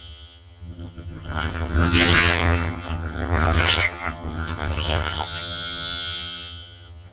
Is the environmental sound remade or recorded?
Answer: remade